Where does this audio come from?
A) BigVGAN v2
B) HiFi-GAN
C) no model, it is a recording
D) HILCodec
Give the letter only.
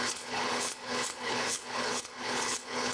D